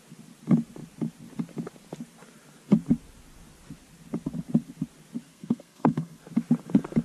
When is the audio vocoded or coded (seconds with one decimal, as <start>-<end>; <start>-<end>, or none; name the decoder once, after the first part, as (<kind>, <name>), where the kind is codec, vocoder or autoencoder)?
5.3-6.2 (codec, SNAC)